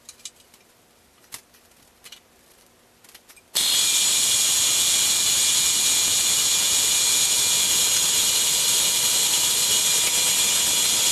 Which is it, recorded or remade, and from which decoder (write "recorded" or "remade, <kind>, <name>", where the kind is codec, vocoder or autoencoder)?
recorded